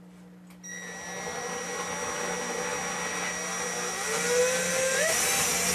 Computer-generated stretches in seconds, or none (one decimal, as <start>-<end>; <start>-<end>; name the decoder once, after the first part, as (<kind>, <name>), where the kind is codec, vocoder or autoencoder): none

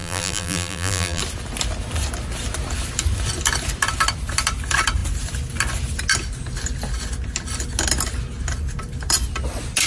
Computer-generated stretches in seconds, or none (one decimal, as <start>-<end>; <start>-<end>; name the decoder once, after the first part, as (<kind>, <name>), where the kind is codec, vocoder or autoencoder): 0.0-1.2 (vocoder, BigVGAN v2)

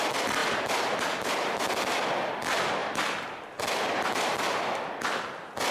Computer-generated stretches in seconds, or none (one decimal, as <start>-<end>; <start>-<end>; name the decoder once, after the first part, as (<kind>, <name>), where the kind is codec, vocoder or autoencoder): 0.4-2.3 (vocoder, BigVGAN v2); 2.8-4.8

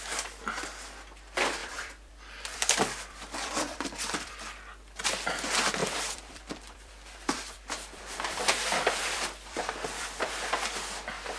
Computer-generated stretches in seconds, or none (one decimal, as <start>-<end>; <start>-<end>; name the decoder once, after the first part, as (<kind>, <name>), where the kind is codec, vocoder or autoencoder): 1.6-4.3 (vocoder, BigVGAN v2); 5.8-10.3

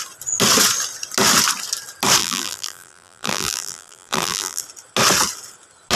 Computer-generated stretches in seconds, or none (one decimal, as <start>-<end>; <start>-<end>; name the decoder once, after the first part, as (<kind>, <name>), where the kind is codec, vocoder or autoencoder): 2.2-4.6 (vocoder, BigVGAN v2)

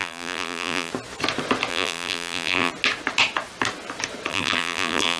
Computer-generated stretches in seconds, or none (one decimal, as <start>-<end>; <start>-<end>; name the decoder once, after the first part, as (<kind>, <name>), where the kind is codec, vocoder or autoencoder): 0.0-0.9 (vocoder, BigVGAN v2); 1.7-2.7; 4.3-5.2